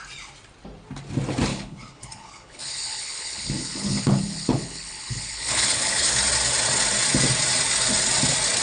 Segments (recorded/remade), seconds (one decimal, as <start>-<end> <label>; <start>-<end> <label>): 0.0-1.5 recorded; 1.5-6.2 remade; 6.2-8.6 recorded